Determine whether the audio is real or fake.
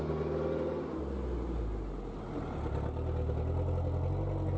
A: real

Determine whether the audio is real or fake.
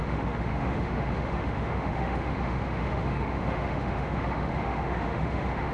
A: fake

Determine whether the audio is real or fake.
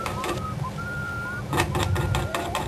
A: real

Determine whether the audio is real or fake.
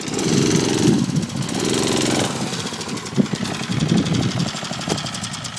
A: real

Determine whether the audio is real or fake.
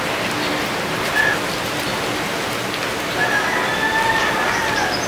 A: real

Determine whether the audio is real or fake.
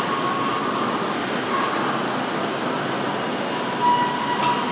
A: real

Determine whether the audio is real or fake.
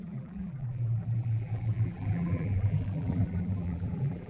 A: fake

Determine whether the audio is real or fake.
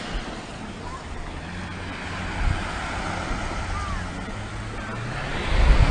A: real